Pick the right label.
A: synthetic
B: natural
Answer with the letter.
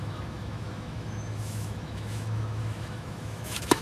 A